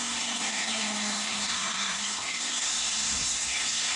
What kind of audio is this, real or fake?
fake